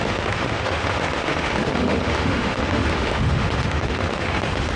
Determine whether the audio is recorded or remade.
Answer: remade